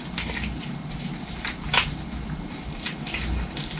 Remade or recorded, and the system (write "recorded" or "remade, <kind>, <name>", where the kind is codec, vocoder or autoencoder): recorded